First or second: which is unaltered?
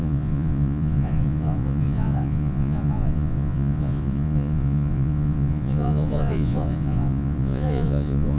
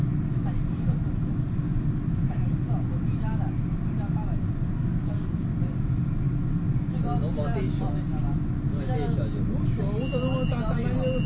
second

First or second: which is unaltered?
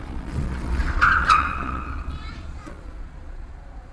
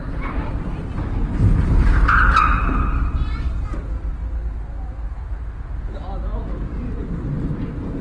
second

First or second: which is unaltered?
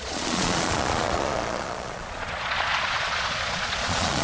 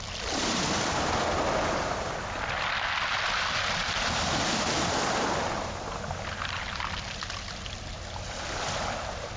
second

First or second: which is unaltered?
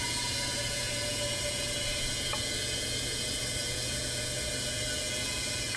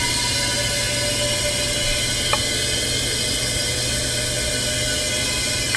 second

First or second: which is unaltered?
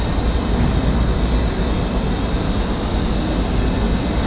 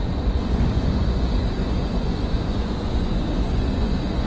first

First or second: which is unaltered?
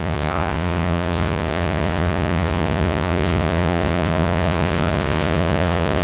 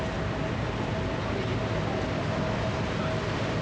second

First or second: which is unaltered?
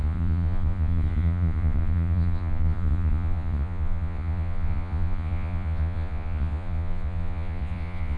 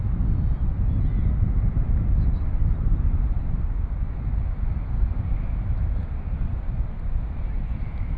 second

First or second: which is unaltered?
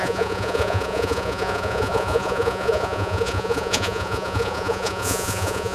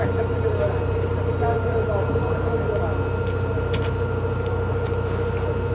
second